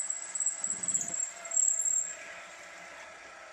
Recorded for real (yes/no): yes